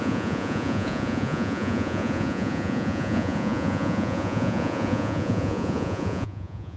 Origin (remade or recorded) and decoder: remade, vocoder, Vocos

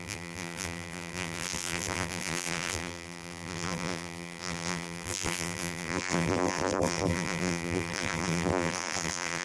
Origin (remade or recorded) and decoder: remade, vocoder, BigVGAN v2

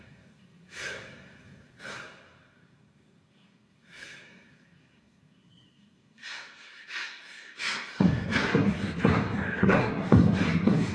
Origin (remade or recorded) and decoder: remade, codec, SNAC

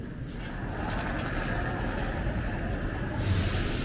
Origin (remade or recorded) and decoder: recorded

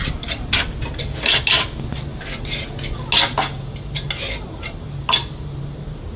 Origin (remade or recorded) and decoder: recorded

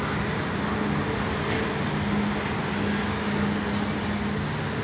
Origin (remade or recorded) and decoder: recorded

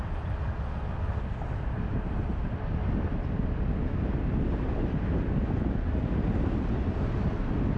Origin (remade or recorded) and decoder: recorded